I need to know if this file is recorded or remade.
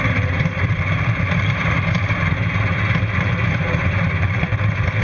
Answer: remade